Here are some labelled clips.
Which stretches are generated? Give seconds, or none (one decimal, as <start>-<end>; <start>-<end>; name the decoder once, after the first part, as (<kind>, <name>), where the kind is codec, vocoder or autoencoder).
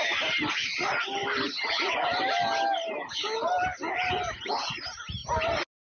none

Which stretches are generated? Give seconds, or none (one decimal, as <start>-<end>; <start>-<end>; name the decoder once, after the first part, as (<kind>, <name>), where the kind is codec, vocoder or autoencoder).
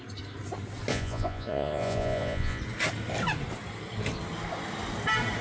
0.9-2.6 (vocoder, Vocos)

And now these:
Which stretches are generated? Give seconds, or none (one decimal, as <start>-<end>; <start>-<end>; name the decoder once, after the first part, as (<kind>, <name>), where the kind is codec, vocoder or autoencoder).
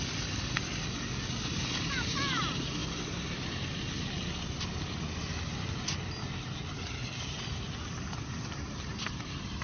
none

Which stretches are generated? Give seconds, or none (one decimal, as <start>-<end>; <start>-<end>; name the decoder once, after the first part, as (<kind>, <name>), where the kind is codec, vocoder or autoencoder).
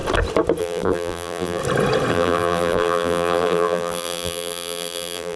0.6-1.6 (vocoder, BigVGAN v2); 2.1-5.4